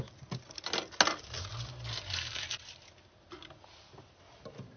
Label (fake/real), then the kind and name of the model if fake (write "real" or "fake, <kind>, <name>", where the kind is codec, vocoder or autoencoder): real